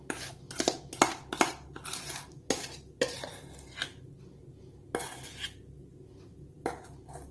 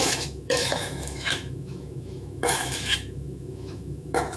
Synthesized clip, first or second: second